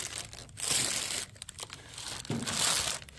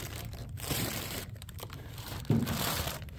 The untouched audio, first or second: first